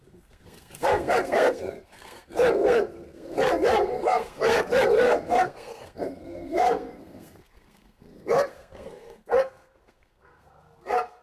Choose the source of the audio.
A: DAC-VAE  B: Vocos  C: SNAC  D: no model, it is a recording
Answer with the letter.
C